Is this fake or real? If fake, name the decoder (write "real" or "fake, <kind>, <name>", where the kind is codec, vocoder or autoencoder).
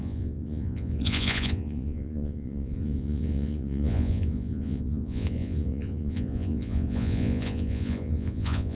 fake, vocoder, Vocos